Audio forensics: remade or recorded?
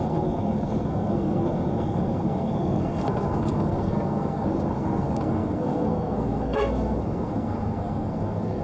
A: remade